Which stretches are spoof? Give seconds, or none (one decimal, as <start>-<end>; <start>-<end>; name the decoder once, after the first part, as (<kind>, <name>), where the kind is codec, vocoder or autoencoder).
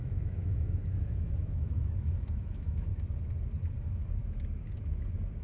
0.0-2.9 (autoencoder, DAC-VAE)